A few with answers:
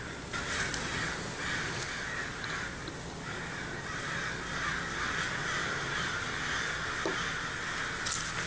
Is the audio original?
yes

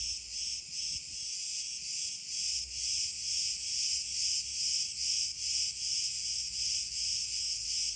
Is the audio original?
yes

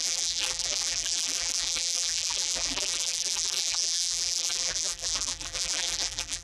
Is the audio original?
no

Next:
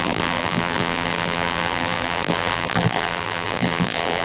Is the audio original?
no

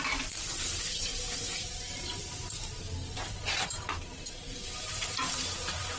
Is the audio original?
no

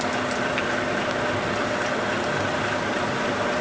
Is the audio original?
yes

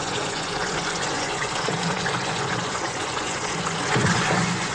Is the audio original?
no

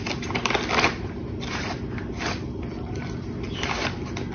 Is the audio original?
yes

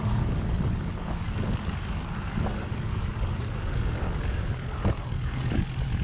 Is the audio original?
no